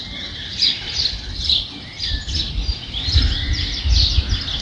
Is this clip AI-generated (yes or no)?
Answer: no